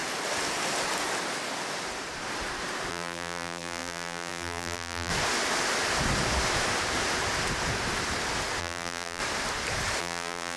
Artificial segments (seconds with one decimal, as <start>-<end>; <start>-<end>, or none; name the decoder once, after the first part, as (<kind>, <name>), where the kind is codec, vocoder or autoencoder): 2.9-5.1 (vocoder, BigVGAN v2); 8.6-9.2; 10.0-10.6